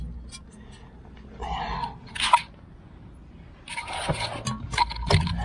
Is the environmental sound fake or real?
real